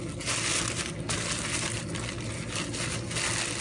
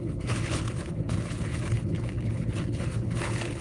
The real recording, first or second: first